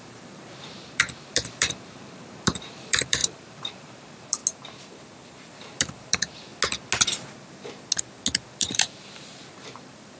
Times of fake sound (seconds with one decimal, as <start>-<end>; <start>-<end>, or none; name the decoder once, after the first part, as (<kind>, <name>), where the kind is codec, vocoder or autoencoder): 0.0-4.4 (vocoder, BigVGAN v2); 5.5-6.5; 8.6-10.2